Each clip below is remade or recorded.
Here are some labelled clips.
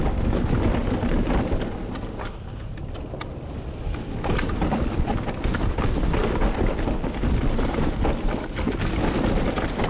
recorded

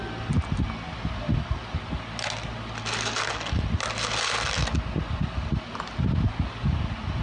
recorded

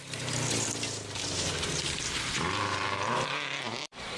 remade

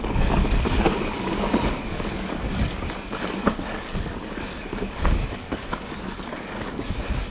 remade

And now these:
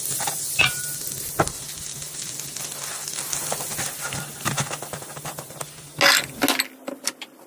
recorded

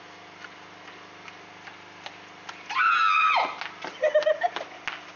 recorded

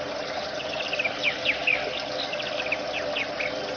recorded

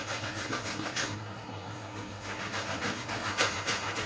remade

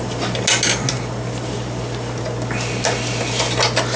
recorded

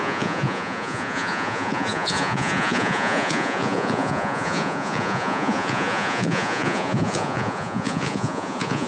remade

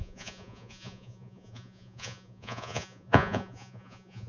remade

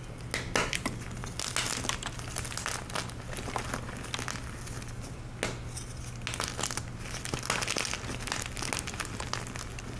recorded